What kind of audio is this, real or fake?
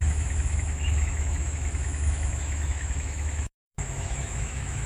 fake